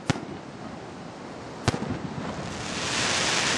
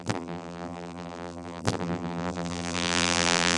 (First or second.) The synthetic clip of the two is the second